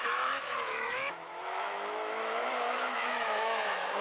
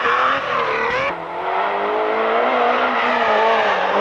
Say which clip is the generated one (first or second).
first